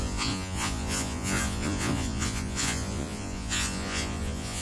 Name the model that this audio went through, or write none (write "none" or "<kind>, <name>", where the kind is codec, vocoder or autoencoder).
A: vocoder, Vocos